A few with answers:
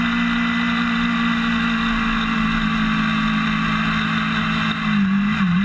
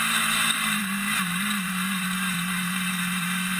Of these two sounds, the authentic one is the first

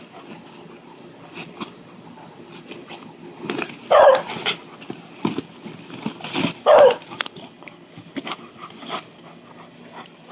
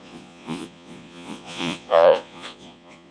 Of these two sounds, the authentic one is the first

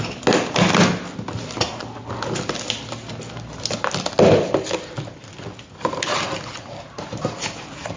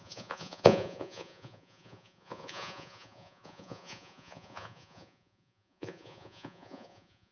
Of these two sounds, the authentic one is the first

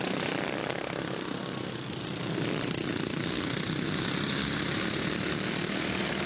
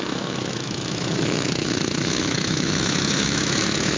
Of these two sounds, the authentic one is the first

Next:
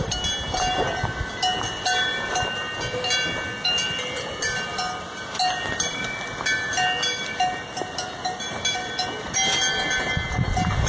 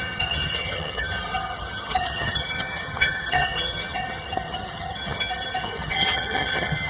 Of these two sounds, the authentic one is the first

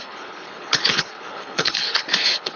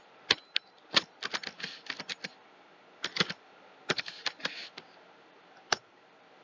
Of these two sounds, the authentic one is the second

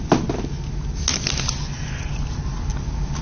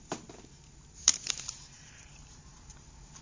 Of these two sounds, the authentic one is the first